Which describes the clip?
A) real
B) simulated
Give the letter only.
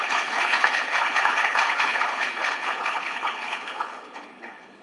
B